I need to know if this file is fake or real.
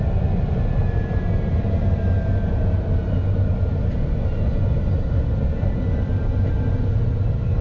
real